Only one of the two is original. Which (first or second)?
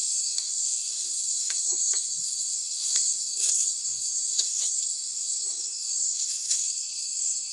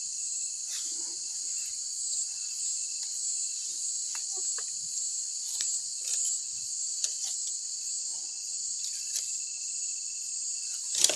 second